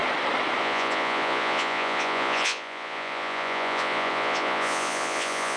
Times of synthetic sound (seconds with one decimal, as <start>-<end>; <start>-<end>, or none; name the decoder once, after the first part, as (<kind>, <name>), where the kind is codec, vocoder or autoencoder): 0.6-5.6 (vocoder, Vocos)